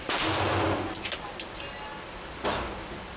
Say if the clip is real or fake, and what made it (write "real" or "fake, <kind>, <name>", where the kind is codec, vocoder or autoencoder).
real